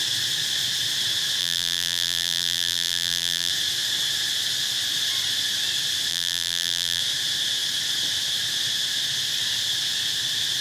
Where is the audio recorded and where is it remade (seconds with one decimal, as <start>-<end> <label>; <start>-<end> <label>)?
0.0-1.4 recorded; 1.4-3.5 remade; 3.5-6.1 recorded; 6.1-7.0 remade; 7.0-10.6 recorded